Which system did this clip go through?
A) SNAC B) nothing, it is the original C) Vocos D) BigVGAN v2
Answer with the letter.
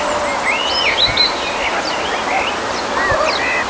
B